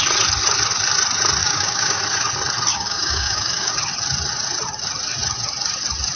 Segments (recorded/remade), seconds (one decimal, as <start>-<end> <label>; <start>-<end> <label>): 0.0-1.4 recorded; 1.4-2.0 remade; 2.0-2.7 recorded; 2.7-3.7 remade; 3.7-6.2 recorded